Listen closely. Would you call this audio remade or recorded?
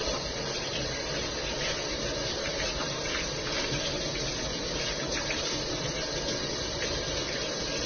recorded